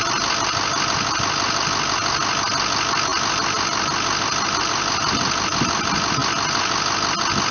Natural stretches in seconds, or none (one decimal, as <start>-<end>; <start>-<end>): 0.0-7.5